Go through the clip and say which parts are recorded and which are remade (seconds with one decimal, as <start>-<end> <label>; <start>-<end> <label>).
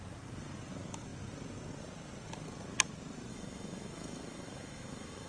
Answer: 0.0-3.3 recorded; 3.3-5.3 remade